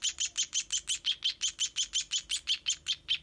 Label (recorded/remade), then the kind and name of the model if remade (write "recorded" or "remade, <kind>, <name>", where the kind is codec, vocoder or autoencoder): recorded